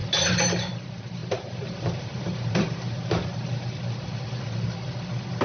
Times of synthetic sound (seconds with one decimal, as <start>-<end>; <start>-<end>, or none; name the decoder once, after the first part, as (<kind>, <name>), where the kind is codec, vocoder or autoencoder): 1.2-3.8 (vocoder, BigVGAN v2)